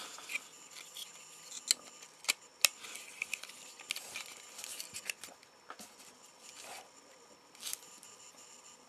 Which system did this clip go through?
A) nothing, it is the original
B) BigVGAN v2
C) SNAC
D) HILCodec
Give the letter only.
A